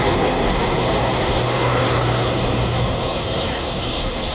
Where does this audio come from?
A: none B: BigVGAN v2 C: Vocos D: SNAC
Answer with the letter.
D